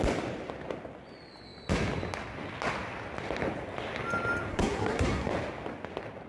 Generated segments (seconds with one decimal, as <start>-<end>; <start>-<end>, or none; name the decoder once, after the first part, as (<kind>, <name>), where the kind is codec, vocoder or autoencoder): 4.5-5.3 (codec, SNAC)

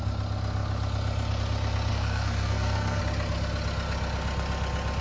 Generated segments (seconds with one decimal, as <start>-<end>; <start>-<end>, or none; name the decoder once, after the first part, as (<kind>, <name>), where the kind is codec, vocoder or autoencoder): 1.9-3.0 (codec, SNAC)

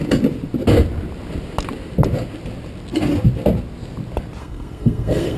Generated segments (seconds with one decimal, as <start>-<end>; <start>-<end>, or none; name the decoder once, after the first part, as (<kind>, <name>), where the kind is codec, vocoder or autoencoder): 4.4-5.4 (codec, SNAC)

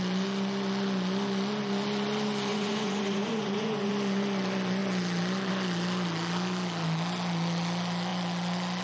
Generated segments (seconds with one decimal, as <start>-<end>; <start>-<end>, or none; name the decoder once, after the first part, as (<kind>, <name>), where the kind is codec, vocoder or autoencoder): 2.5-3.9 (vocoder, Vocos)

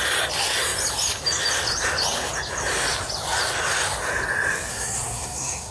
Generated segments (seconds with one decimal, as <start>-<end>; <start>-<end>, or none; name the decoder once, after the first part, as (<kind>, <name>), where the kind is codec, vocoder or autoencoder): 4.7-5.7 (codec, SNAC)

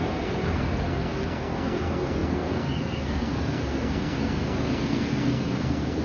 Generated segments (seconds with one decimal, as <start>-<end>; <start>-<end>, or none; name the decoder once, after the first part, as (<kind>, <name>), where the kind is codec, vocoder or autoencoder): 0.0-6.0 (codec, SNAC)

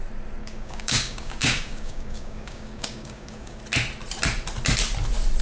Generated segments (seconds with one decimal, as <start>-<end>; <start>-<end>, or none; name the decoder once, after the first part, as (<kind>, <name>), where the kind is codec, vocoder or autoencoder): 0.4-3.6 (codec, DAC)